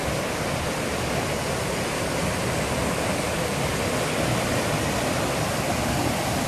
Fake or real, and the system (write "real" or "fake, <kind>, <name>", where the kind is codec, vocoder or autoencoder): real